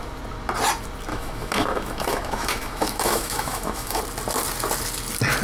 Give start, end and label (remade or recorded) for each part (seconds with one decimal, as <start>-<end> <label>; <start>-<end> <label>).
0.0-1.1 recorded; 1.1-4.0 remade; 4.0-5.4 recorded